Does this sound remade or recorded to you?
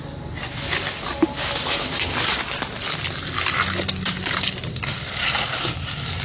recorded